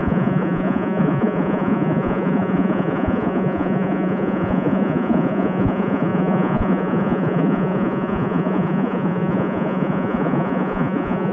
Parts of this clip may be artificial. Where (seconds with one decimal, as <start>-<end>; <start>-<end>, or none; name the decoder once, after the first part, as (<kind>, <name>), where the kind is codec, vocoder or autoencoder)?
0.0-11.3 (vocoder, Vocos)